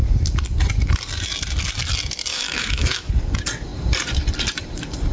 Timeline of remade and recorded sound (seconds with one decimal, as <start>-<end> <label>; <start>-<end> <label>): 0.0-2.3 recorded; 2.3-3.1 remade; 3.1-5.1 recorded